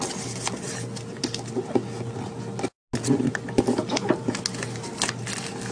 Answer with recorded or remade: recorded